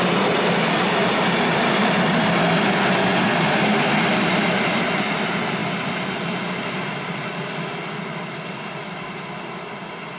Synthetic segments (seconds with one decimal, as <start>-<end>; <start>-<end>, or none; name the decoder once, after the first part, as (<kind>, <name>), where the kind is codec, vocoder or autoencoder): none

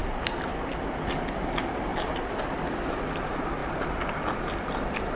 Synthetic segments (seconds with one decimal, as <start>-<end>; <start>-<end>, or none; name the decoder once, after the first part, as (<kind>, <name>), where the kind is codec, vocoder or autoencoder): 1.9-2.9 (vocoder, BigVGAN v2); 3.6-5.2

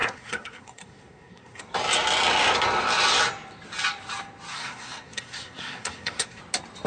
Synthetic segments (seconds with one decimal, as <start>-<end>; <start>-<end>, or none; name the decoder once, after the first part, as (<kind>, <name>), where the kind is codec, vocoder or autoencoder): 0.0-1.6 (codec, SNAC); 4.5-6.4

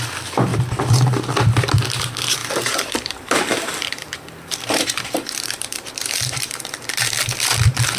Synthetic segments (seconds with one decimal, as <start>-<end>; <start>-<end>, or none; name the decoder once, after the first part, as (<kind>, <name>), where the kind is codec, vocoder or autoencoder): 0.5-1.3 (vocoder, BigVGAN v2); 2.4-6.9

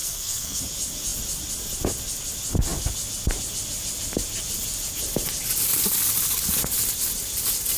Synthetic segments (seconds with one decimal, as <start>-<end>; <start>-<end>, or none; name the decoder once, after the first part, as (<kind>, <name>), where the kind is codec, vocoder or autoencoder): 0.0-0.6 (codec, SNAC)

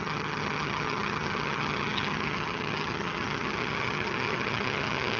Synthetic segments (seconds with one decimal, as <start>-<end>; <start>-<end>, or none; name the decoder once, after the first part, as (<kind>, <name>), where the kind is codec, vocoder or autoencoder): 0.0-5.2 (vocoder, HiFi-GAN)

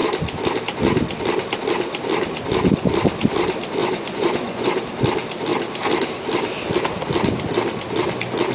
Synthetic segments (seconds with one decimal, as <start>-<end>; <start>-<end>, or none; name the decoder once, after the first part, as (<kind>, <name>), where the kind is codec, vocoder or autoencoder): 3.8-4.8 (vocoder, Vocos)

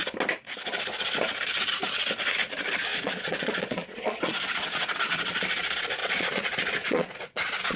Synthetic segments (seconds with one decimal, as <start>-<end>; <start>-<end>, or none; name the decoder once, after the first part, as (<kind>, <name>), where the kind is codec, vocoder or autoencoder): 2.9-5.2 (vocoder, Vocos); 6.0-7.8